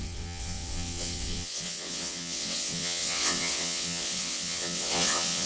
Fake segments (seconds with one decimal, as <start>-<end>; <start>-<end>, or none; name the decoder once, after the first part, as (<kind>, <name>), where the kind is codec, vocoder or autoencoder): 0.0-5.5 (vocoder, WaveNeXt)

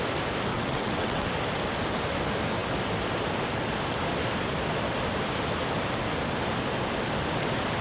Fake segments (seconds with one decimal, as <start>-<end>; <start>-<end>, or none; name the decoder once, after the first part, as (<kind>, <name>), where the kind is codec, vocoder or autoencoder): 0.5-1.3 (vocoder, WaveNeXt)

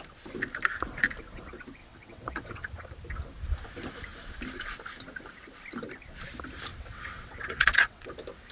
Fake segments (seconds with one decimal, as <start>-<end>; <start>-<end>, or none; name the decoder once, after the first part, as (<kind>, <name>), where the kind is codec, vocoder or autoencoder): 1.8-2.8 (vocoder, WaveNeXt); 6.7-8.1

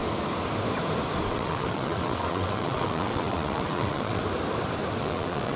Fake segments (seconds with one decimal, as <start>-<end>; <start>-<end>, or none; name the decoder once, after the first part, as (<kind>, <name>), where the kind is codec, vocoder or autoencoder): 1.3-4.2 (vocoder, WaveNeXt); 5.0-5.6

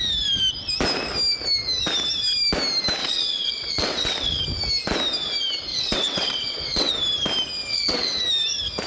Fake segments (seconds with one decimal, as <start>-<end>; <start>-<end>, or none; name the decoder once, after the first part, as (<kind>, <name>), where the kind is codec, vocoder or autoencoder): 3.0-4.4 (vocoder, WaveNeXt); 5.7-6.9; 7.7-8.2

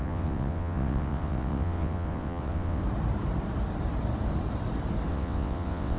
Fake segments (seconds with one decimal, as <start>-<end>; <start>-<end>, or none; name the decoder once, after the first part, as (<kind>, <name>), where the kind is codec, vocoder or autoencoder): 0.0-2.8 (vocoder, WaveNeXt); 5.1-6.0